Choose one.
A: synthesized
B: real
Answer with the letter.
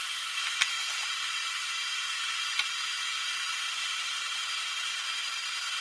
B